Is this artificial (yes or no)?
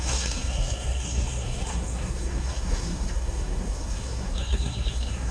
yes